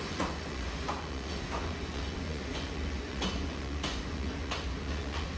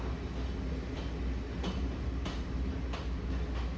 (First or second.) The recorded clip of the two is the second